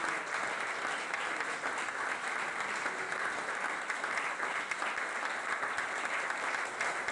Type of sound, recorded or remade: recorded